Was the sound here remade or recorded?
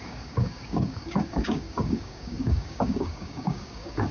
remade